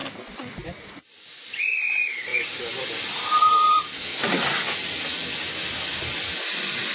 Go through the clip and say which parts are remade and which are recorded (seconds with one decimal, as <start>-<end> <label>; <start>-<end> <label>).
0.0-4.1 remade; 4.1-6.9 recorded

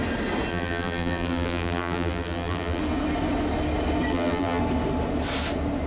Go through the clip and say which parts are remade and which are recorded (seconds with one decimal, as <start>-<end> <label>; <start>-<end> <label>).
0.0-0.5 recorded; 0.5-2.8 remade; 2.8-4.1 recorded; 4.1-4.6 remade; 4.6-5.9 recorded

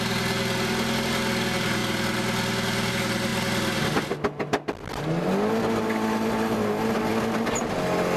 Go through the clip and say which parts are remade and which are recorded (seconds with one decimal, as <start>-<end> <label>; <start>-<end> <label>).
0.0-8.2 recorded

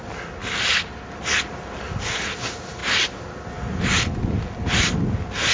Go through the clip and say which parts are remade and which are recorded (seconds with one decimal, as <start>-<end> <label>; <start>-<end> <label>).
0.0-0.4 recorded; 0.4-2.0 remade; 2.0-5.5 recorded

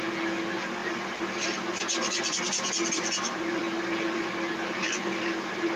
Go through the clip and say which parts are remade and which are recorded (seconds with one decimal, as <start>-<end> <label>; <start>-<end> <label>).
0.0-0.8 recorded; 0.8-4.3 remade; 4.3-4.8 recorded; 4.8-5.8 remade

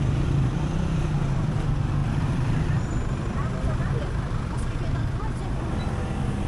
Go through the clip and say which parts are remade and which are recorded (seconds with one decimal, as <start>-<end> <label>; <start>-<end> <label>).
0.0-2.0 recorded; 2.0-5.7 remade; 5.7-6.5 recorded

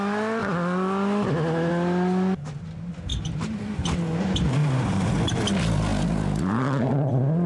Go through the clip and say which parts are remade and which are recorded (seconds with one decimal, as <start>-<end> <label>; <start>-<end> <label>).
0.0-3.1 recorded; 3.1-3.6 remade; 3.6-4.6 recorded; 4.6-5.4 remade; 5.4-7.5 recorded